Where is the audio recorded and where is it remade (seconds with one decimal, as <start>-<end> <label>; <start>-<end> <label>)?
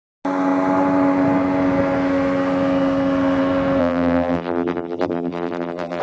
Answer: 0.0-3.8 recorded; 3.8-6.0 remade